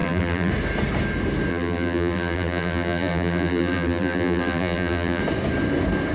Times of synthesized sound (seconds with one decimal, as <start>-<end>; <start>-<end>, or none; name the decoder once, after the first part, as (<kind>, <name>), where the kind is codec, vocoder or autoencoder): 0.0-0.5 (vocoder, BigVGAN v2); 1.5-5.2